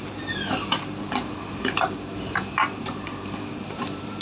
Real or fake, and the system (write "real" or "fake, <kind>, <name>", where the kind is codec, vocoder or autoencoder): fake, vocoder, BigVGAN v2